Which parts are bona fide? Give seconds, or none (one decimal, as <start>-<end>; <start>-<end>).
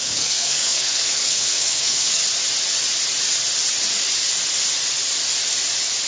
2.2-6.1